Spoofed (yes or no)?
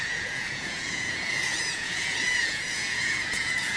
yes